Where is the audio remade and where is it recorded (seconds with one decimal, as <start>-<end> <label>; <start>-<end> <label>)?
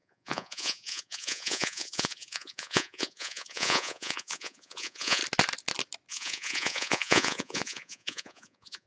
0.0-5.2 remade; 5.2-6.1 recorded; 6.1-8.9 remade